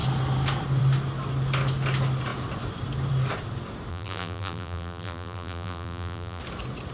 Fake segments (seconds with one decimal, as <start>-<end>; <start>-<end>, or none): 3.9-6.4

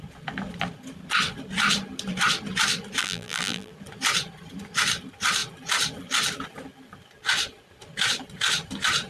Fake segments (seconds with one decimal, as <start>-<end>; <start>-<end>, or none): 3.0-3.7

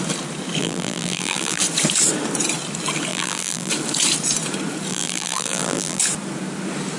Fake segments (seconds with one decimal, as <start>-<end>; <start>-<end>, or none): 0.6-1.6; 3.1-3.7; 4.9-6.0

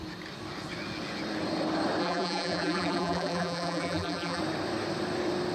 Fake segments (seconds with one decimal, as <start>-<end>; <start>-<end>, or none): 2.0-4.4